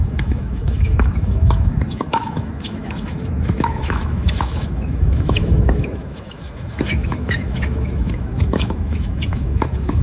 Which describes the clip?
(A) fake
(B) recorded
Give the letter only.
A